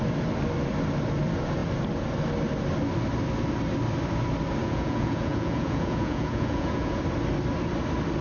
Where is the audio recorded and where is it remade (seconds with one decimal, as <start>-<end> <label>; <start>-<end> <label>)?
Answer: 0.0-4.6 recorded; 4.6-7.0 remade; 7.0-8.2 recorded